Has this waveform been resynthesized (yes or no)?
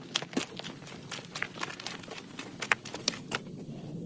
no